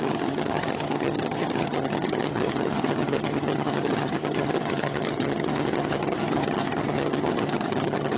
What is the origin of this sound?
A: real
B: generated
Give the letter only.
B